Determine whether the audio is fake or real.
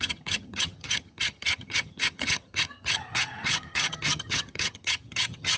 fake